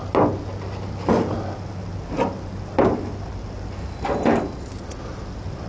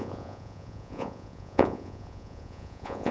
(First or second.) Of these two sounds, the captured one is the first